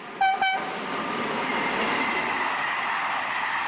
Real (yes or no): yes